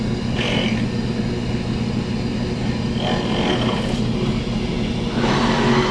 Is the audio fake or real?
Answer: real